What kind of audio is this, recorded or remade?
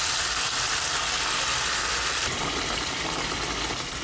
recorded